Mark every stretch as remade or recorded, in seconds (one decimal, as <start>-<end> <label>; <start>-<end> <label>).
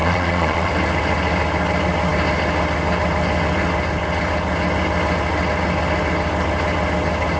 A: 0.0-0.7 remade; 0.7-7.4 recorded